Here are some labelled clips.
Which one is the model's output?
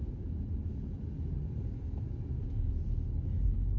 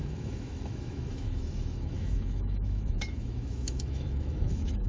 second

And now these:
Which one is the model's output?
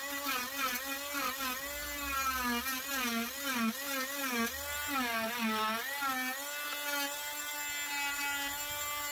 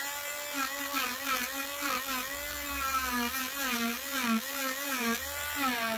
second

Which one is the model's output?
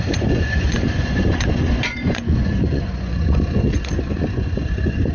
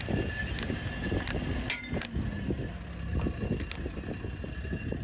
first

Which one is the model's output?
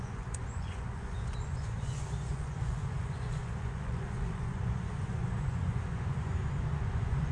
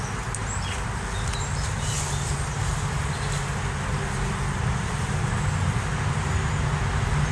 first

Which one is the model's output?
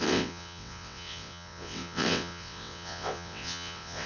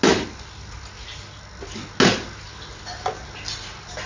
first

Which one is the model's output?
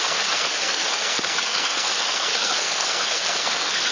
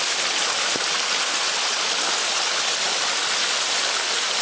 first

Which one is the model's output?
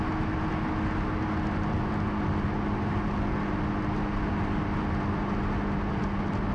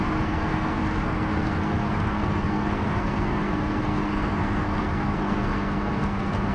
second